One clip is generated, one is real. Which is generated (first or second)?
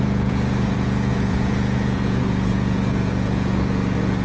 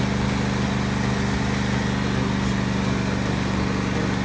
first